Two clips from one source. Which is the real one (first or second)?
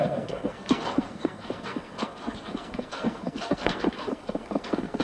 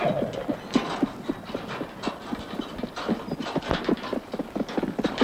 second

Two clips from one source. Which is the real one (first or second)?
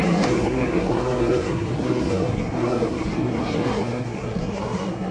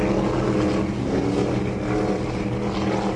second